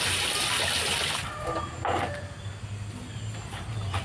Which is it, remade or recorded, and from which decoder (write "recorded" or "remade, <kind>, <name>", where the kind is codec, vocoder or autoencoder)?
recorded